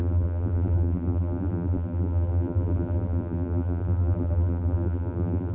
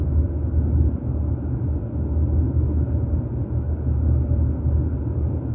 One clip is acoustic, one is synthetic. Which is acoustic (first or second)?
second